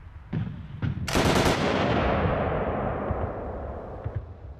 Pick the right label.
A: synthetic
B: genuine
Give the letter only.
B